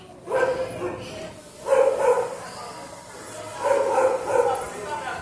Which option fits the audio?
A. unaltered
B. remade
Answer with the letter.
A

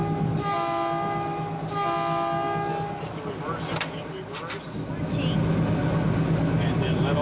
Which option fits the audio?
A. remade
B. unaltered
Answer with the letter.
B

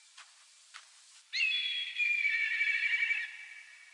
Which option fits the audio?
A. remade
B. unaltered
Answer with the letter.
B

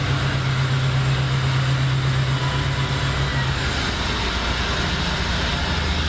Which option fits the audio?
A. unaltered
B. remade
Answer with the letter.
A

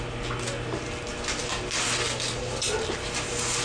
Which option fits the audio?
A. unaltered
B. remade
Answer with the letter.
A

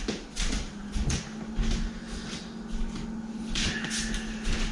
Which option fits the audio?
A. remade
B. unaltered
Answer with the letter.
B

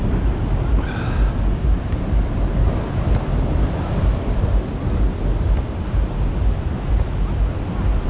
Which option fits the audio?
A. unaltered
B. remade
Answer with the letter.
A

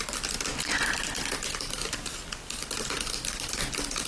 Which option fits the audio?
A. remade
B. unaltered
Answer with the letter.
B